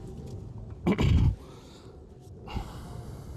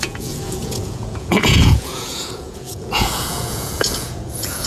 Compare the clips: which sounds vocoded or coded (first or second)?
second